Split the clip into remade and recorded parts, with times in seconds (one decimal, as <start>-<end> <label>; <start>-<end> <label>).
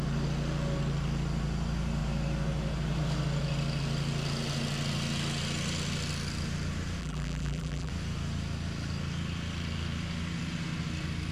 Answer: 0.0-7.0 recorded; 7.0-7.9 remade; 7.9-11.3 recorded